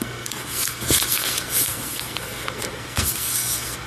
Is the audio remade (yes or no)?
yes